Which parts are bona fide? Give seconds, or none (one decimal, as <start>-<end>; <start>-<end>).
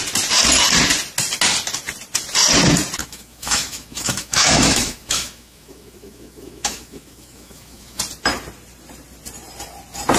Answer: 0.0-3.0; 8.0-10.2